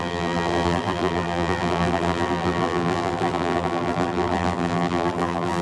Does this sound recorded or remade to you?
remade